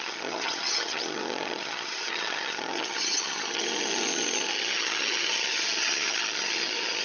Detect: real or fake fake